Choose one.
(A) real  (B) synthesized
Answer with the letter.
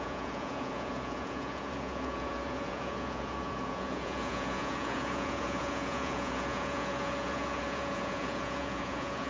B